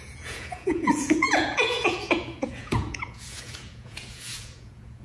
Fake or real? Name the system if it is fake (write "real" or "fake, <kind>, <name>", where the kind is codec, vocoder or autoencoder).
fake, vocoder, Vocos